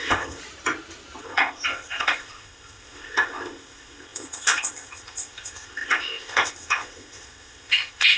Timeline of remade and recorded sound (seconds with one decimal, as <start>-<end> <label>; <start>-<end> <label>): 0.0-0.4 remade; 0.4-1.2 recorded; 1.2-8.2 remade